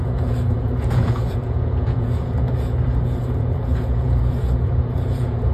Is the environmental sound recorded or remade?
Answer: remade